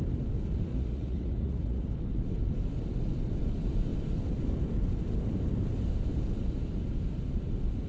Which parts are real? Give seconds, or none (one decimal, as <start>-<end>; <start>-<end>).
0.0-0.7; 1.9-7.9